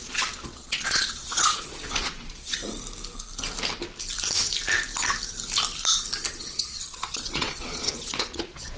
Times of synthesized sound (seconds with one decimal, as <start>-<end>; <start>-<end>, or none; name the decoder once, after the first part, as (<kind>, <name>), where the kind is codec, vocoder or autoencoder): 0.0-2.6 (vocoder, Vocos); 6.3-8.8